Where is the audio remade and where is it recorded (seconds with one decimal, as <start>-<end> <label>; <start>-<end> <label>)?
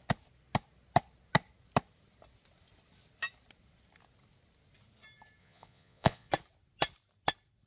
0.0-5.4 recorded; 5.4-6.3 remade; 6.3-7.7 recorded